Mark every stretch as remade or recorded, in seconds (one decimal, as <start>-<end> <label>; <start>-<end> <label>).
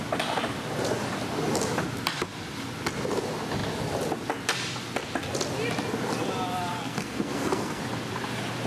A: 0.0-6.7 recorded; 6.7-7.8 remade; 7.8-8.7 recorded